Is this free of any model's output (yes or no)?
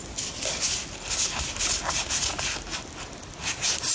yes